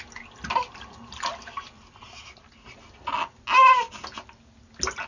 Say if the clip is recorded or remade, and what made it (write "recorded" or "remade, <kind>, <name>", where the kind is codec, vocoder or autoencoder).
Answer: recorded